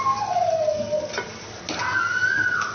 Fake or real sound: real